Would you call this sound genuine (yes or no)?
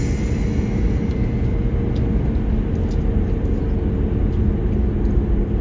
yes